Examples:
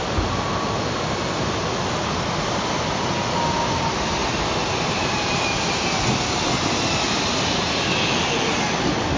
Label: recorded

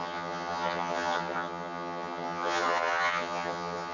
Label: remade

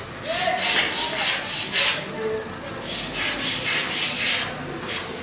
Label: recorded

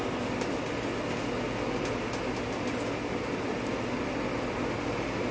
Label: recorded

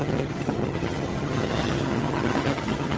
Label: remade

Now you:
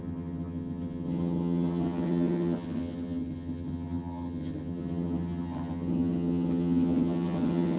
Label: remade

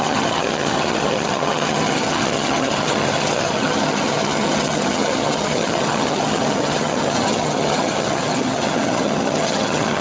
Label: remade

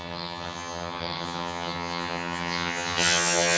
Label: remade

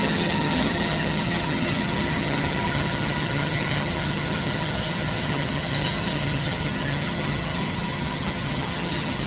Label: remade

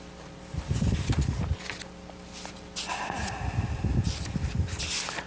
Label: recorded